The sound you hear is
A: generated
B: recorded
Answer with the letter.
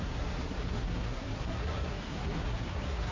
A